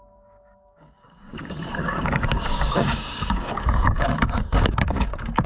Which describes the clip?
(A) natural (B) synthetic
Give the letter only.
B